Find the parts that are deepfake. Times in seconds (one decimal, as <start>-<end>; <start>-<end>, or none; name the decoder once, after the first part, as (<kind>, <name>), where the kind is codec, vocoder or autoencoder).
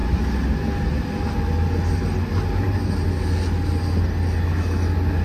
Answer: none